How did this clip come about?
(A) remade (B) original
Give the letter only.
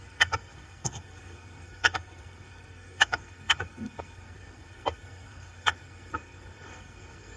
A